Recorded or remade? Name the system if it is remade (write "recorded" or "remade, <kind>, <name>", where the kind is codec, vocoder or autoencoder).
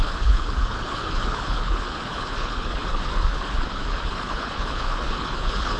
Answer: remade, codec, HILCodec